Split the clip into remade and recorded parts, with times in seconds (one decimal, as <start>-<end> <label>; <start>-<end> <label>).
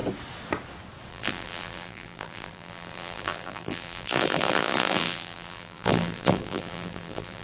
0.0-1.1 recorded; 1.1-7.4 remade